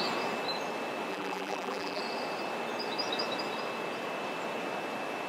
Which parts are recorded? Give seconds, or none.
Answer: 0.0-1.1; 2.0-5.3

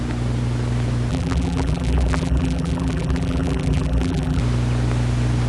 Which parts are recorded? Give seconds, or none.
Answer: 0.0-1.1; 4.4-5.5

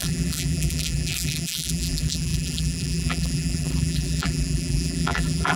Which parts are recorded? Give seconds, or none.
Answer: none

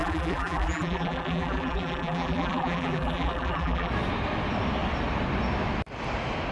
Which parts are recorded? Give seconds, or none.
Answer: 3.9-6.5

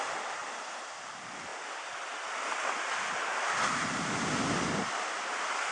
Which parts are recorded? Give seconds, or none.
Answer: 0.0-0.4; 1.1-5.7

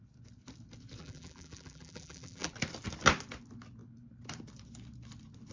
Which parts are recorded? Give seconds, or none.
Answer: 0.0-1.0; 2.5-5.5